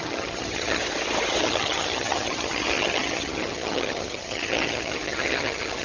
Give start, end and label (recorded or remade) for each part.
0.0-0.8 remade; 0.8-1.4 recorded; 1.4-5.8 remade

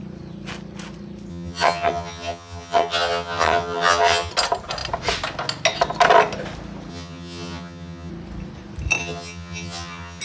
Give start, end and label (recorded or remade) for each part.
0.0-1.3 recorded; 1.3-4.3 remade; 4.3-6.9 recorded; 6.9-8.1 remade; 8.1-9.0 recorded; 9.0-10.2 remade

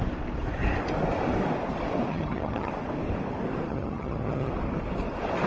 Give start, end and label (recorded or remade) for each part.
0.0-2.1 recorded; 2.1-2.7 remade; 2.7-3.7 recorded; 3.7-4.5 remade; 4.5-5.5 recorded